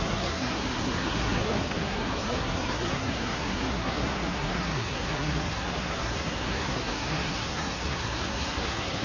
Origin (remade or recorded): remade